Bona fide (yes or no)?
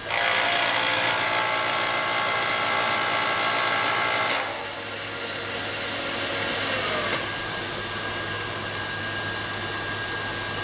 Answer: yes